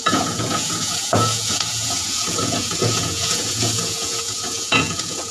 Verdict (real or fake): fake